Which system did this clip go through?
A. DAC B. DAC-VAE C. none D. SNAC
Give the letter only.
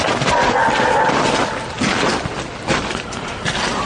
C